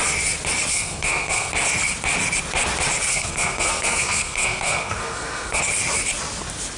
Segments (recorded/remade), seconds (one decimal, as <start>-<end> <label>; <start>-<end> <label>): 0.0-0.7 recorded; 0.7-1.5 remade; 1.5-3.1 recorded; 3.1-5.6 remade; 5.6-6.8 recorded